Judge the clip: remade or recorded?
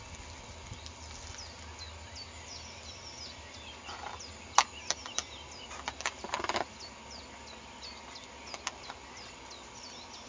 recorded